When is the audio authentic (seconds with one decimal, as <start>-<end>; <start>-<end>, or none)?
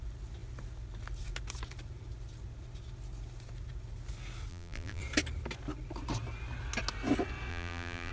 0.0-4.5; 5.0-7.5